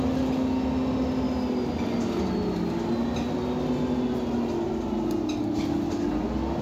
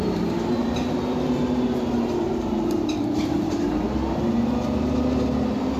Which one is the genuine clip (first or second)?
first